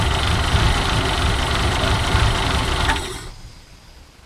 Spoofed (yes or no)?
no